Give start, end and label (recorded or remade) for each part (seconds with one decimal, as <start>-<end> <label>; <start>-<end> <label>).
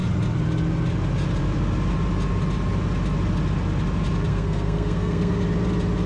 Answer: 0.0-4.3 recorded; 4.3-5.4 remade; 5.4-6.1 recorded